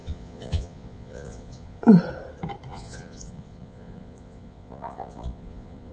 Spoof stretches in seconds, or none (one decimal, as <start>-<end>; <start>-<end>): 0.0-1.8; 2.7-5.9

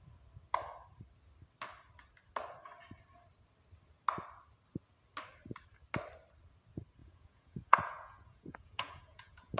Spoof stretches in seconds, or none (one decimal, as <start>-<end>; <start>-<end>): 7.0-9.6